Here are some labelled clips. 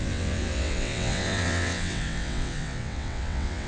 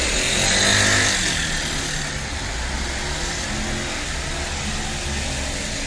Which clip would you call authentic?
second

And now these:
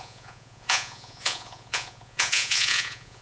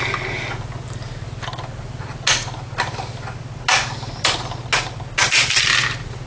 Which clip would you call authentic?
second